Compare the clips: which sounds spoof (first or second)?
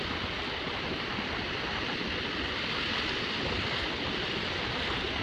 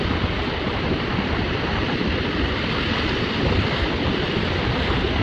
second